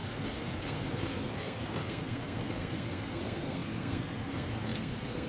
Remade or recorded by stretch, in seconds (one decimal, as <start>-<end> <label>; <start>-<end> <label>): 0.0-5.3 remade